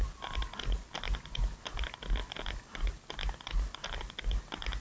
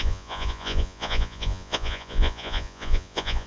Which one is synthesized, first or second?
second